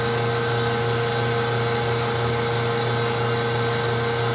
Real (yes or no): yes